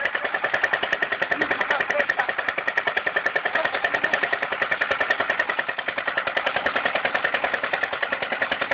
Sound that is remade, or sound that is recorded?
recorded